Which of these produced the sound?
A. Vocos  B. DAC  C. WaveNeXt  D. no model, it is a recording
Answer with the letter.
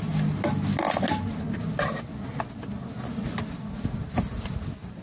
D